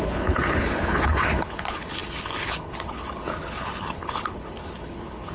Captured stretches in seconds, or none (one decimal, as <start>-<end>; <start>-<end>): none